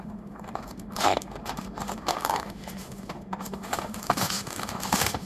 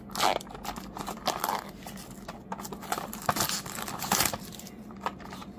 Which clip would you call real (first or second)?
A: second